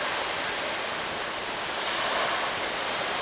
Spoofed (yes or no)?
no